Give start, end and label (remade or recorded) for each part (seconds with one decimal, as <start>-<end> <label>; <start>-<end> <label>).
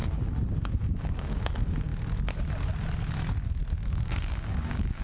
0.0-0.8 recorded; 0.8-1.9 remade; 1.9-3.9 recorded; 3.9-5.0 remade